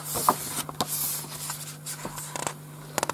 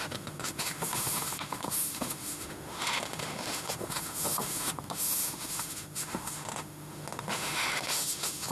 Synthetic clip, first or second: second